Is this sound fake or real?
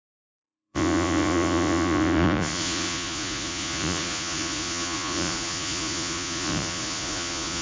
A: fake